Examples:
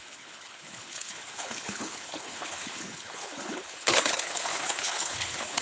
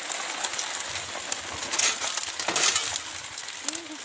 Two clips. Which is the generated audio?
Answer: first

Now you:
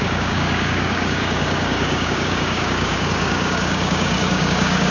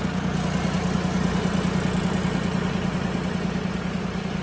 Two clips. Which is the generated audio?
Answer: first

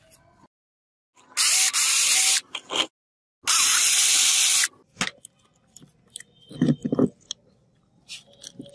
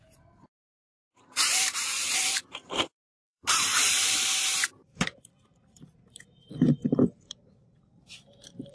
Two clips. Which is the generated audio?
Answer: second